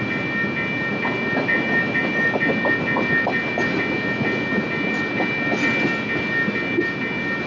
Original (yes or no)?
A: yes